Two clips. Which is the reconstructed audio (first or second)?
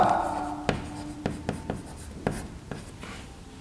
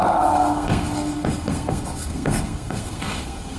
second